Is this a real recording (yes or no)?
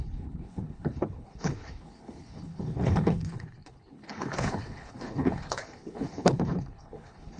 no